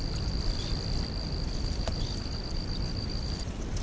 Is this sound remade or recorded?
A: recorded